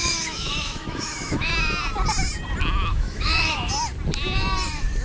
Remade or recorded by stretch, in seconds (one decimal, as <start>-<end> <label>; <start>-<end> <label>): 0.0-1.5 remade; 1.5-2.9 recorded; 2.9-3.7 remade; 3.7-5.0 recorded